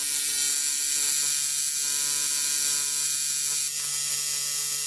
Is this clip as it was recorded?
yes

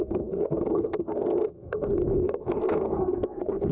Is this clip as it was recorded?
no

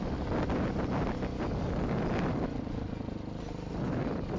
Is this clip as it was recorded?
yes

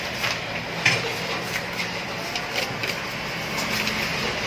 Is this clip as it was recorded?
yes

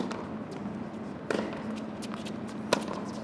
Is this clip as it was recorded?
yes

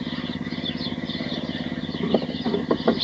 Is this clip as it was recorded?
yes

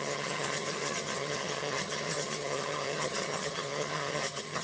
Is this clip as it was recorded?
no